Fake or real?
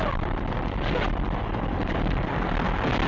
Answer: real